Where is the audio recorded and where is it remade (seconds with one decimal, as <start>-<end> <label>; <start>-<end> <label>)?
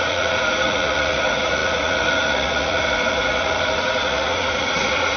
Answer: 0.0-5.2 remade